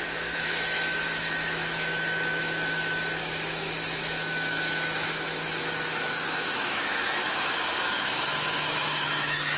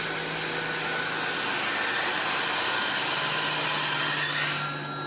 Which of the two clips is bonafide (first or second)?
second